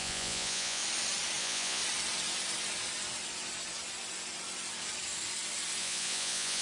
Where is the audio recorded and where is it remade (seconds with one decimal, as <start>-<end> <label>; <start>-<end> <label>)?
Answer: 0.0-0.8 remade; 0.8-1.4 recorded; 1.4-1.8 remade; 1.8-5.8 recorded; 5.8-6.6 remade